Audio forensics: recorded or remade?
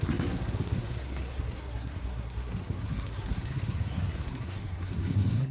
remade